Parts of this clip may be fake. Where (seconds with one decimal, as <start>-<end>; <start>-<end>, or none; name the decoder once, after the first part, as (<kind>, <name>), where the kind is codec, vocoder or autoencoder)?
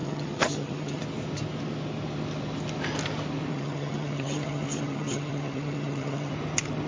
0.0-1.0 (vocoder, HiFi-GAN); 3.5-6.3